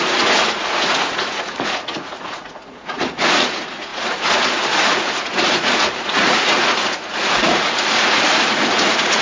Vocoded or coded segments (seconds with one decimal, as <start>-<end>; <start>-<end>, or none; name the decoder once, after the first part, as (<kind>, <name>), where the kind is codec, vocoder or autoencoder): 0.0-9.2 (vocoder, Vocos)